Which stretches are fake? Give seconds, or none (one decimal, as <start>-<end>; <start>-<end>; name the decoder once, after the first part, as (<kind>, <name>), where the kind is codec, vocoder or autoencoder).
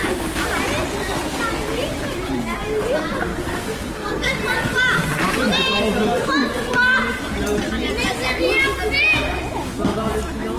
3.3-4.3 (codec, SNAC)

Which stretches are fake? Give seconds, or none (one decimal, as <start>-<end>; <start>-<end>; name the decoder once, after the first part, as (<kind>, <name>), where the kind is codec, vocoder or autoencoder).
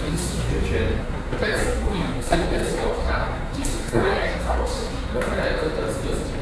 0.0-0.5 (codec, SNAC); 1.0-5.4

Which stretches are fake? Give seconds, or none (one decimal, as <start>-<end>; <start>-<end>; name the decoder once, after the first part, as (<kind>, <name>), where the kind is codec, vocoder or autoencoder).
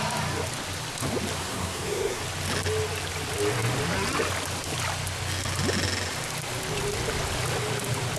1.4-2.2 (codec, SNAC)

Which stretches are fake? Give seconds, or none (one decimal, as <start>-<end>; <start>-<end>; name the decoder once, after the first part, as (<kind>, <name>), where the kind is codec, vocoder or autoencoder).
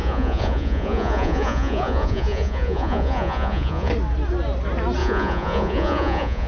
0.0-3.9 (vocoder, Vocos); 5.0-6.5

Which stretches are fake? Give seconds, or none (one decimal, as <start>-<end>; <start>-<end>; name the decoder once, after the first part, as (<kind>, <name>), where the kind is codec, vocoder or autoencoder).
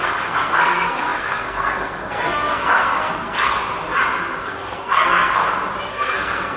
0.0-3.6 (codec, SNAC); 4.4-5.4; 5.9-6.6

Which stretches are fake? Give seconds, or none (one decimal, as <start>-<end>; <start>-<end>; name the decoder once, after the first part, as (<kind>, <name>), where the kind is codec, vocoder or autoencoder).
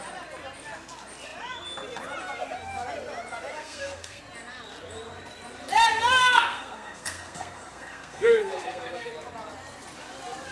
3.5-4.2 (codec, SNAC); 5.9-9.1